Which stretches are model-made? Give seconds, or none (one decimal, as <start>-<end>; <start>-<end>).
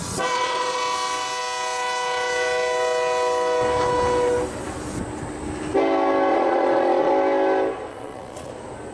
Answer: 0.0-0.8; 6.3-7.1; 7.9-8.5